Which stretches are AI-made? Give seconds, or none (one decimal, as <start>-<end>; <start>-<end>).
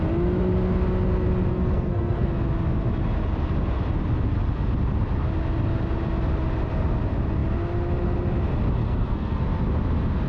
1.5-2.3; 8.8-9.4